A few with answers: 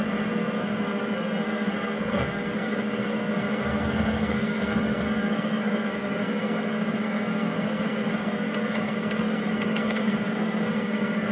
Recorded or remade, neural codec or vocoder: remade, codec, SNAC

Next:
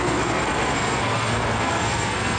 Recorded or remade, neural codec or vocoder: remade, codec, SNAC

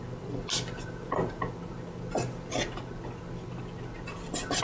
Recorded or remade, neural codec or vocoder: recorded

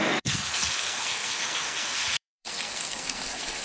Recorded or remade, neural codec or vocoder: remade, codec, SNAC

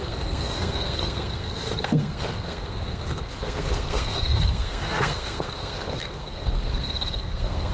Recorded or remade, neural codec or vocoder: remade, codec, SNAC